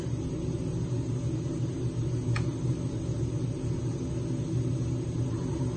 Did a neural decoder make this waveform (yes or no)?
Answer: no